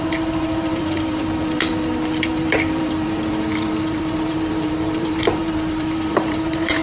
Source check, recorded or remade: remade